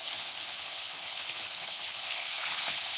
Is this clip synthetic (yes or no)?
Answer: yes